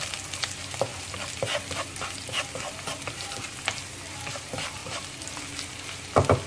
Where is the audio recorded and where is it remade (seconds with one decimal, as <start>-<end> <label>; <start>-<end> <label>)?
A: 0.0-0.9 remade; 0.9-4.3 recorded; 4.3-4.8 remade; 4.8-5.4 recorded; 5.4-6.5 remade